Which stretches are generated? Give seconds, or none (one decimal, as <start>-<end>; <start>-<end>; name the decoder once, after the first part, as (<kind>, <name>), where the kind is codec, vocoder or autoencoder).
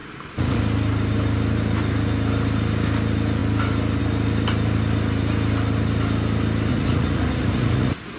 0.0-0.6 (vocoder, Vocos); 6.7-8.2